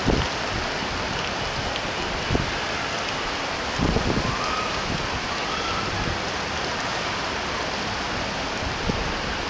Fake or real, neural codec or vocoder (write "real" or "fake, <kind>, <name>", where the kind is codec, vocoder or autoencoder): real